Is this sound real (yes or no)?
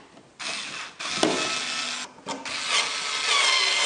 yes